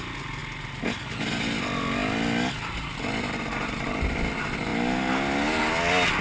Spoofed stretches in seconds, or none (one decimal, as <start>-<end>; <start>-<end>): none